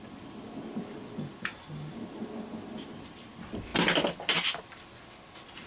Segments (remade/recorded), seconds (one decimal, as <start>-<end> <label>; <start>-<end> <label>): 0.0-5.7 recorded